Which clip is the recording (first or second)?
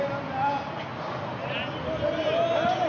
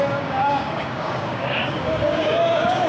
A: first